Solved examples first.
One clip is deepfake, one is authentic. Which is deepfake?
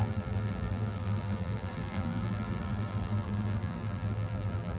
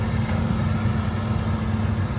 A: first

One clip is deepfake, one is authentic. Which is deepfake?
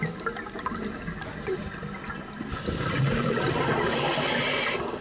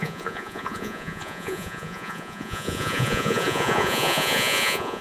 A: second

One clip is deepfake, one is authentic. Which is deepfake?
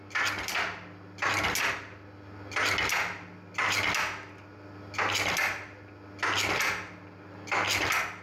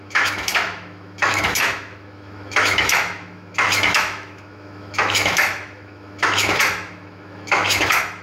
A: second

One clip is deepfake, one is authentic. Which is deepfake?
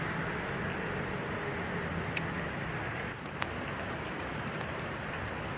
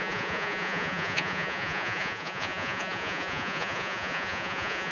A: second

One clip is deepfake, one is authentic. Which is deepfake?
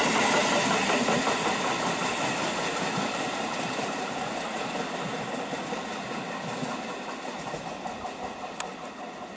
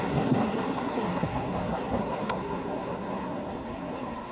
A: second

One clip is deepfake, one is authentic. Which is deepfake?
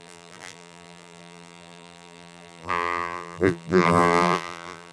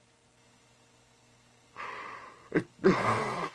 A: first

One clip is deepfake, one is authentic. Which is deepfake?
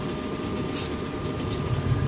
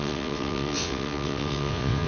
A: second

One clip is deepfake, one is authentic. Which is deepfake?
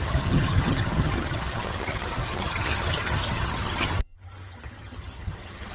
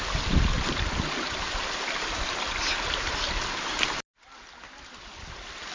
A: first